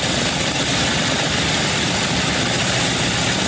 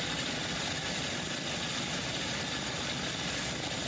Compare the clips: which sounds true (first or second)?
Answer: second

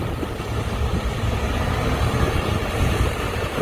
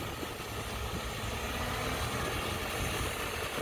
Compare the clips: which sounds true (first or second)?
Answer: second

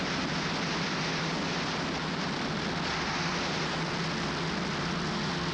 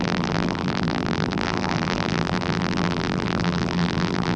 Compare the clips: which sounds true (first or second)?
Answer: first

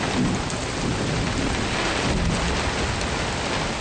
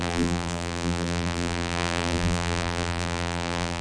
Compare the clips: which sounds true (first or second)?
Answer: first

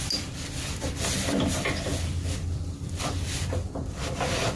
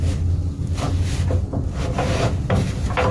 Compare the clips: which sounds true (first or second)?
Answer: second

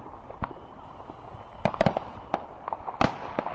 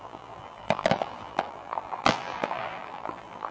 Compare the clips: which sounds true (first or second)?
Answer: first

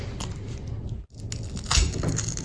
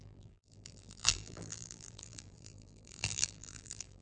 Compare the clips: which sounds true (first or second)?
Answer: first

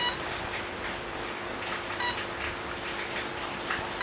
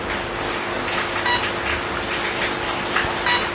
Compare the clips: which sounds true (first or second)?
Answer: second